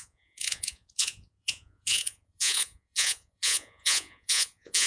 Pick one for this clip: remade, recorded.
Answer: remade